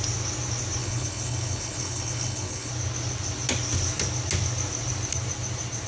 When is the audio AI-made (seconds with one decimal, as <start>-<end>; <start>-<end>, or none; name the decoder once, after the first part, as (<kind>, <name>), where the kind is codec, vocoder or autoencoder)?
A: 0.8-2.7 (codec, HILCodec)